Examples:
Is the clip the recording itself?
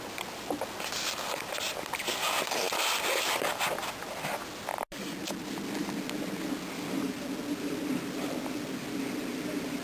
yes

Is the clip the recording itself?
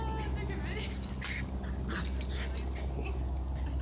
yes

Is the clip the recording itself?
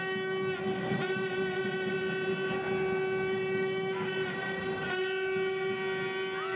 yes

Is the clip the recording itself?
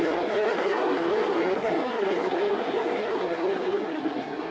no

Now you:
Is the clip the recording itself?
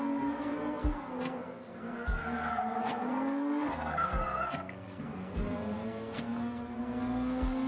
no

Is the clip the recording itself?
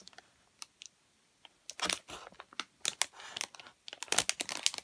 yes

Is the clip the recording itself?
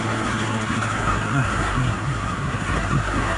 no